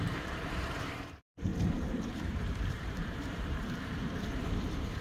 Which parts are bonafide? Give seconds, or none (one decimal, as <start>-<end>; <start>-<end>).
none